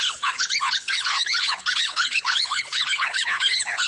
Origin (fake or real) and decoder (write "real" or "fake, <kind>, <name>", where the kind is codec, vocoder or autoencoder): fake, codec, HILCodec